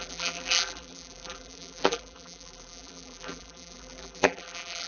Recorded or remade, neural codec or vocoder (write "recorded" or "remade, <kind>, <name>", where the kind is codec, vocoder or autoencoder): remade, vocoder, BigVGAN v2